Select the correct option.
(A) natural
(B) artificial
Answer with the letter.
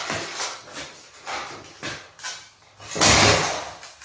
A